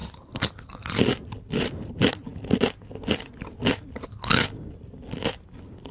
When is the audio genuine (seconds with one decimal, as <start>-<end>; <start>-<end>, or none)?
0.0-5.9